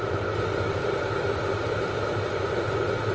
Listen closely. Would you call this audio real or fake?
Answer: real